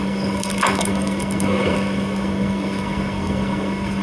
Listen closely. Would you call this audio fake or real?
fake